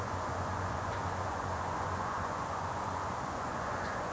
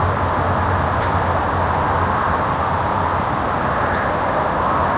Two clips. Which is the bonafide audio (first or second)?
second